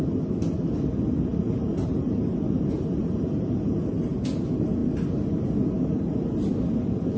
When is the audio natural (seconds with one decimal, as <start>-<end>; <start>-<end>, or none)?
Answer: 0.0-1.3; 4.1-7.2

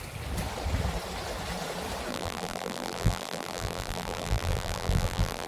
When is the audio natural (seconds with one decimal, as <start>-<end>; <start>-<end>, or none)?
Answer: 0.0-2.1

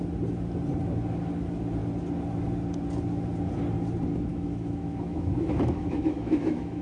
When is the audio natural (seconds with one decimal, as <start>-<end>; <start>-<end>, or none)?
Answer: 0.0-4.3

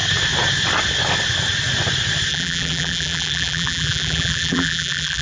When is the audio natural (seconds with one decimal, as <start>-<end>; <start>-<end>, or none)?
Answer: 0.0-2.3

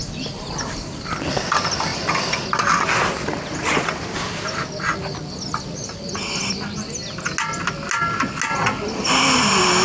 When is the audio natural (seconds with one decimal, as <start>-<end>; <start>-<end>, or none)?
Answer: 0.0-9.8

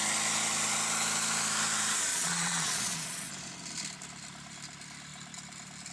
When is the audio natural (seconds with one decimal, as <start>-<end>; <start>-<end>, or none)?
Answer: 0.0-2.1; 3.3-5.9

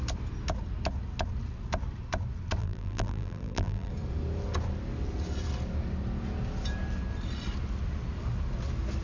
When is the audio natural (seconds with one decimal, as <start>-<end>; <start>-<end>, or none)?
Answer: 0.0-2.6; 3.9-9.0

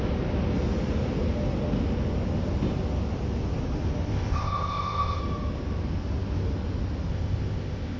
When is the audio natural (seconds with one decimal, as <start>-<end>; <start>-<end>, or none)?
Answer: 0.0-4.1; 5.2-7.1